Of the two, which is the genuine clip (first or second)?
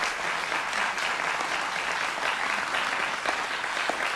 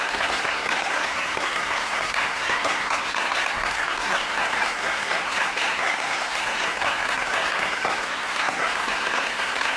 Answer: first